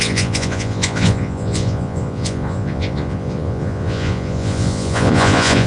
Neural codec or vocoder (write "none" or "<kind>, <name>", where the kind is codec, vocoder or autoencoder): vocoder, Vocos